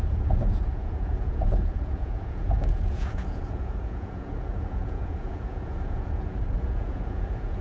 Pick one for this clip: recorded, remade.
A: remade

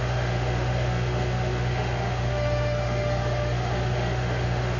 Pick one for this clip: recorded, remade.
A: remade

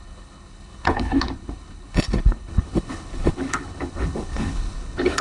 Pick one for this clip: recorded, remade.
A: remade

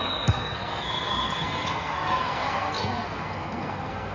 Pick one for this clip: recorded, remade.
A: remade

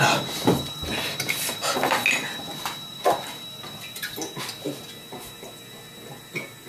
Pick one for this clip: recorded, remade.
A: recorded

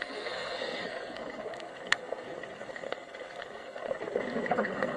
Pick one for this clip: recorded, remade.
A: remade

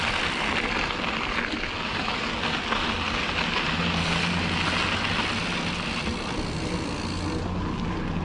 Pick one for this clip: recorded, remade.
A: recorded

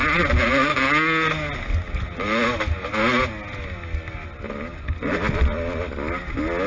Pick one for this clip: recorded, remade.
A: recorded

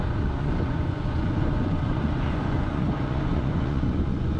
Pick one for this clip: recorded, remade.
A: remade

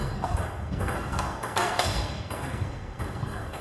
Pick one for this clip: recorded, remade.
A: remade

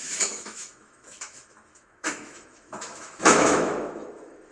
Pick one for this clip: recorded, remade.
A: remade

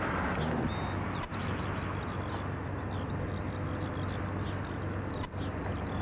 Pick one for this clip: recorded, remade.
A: recorded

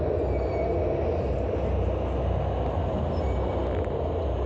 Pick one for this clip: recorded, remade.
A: recorded